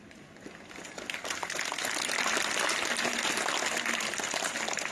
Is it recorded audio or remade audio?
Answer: recorded